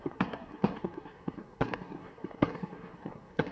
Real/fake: fake